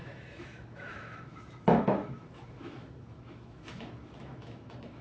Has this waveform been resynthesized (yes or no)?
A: yes